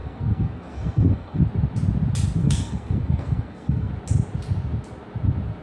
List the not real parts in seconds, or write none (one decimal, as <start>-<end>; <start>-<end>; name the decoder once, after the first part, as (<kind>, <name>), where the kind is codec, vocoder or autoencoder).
0.0-1.4 (codec, SNAC); 2.4-3.9